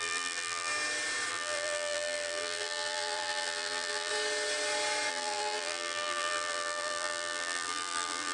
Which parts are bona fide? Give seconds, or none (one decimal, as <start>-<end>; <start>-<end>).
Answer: 0.7-1.3; 4.1-5.1